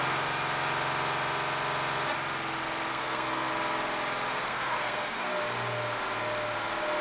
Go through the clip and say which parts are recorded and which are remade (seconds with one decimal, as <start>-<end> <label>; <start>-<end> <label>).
0.0-2.9 recorded; 2.9-3.5 remade; 3.5-4.3 recorded; 4.3-5.4 remade; 5.4-7.0 recorded